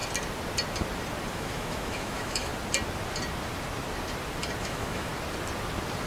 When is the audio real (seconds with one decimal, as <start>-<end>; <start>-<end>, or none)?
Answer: 0.0-1.3; 2.5-4.6; 5.1-6.1